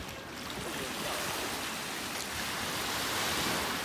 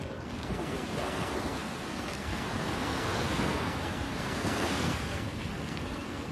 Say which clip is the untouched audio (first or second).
first